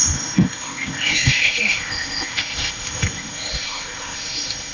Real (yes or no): no